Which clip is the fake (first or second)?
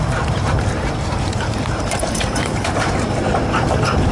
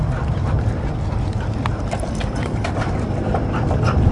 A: first